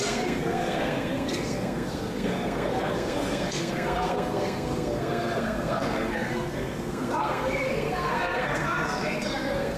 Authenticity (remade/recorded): remade